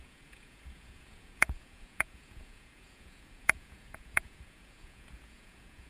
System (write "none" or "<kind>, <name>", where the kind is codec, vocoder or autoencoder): vocoder, Vocos